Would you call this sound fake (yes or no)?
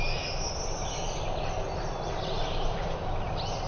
no